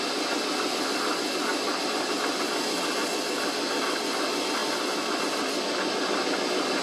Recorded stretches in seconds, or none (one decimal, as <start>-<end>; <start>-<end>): 0.0-6.8